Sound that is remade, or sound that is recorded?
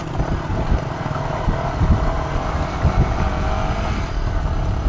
recorded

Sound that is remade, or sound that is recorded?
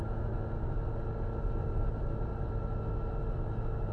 recorded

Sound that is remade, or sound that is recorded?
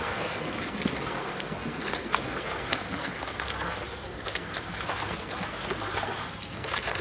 remade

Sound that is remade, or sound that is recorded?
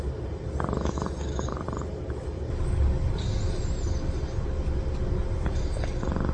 recorded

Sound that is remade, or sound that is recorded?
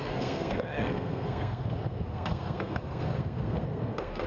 remade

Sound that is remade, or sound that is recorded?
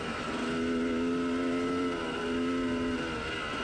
recorded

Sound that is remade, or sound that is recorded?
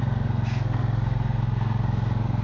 remade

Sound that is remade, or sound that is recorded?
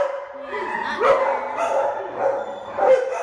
recorded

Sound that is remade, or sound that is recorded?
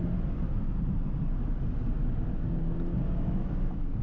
recorded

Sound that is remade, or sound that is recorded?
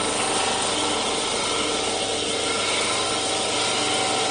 recorded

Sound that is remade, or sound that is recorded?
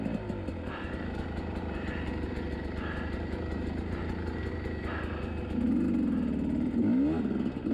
recorded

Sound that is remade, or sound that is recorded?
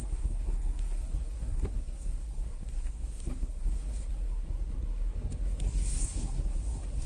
remade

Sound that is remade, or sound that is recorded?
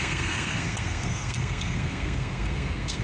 remade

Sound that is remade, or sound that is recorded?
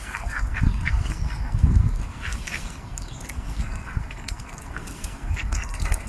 remade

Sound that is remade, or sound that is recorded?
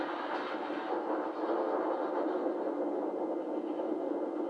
recorded